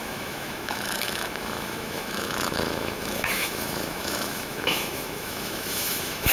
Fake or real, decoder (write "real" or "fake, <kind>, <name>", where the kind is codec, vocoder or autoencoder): fake, autoencoder, DAC-VAE